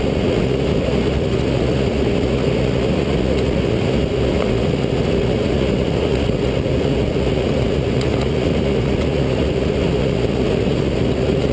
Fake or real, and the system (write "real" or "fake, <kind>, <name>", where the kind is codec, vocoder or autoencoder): fake, vocoder, Vocos